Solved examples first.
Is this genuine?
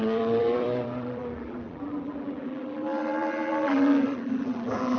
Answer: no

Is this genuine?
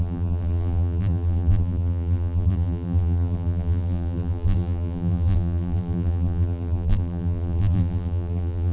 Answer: no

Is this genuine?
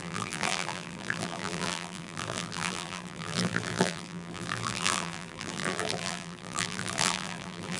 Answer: no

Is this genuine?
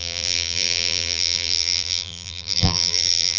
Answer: no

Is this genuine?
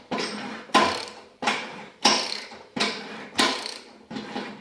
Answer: no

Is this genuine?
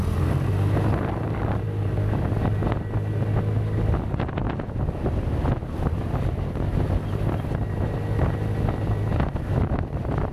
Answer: yes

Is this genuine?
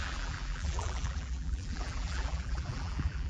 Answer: no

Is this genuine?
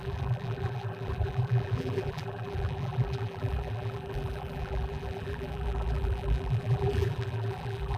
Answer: no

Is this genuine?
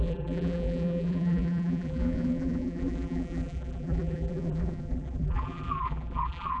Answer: no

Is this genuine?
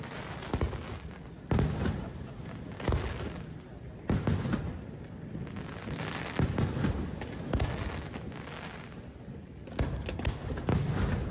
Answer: yes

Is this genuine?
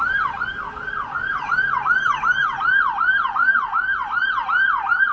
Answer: no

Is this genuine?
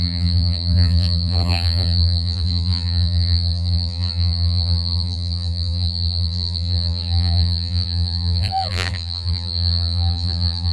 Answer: no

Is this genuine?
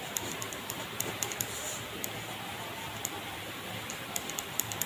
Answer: yes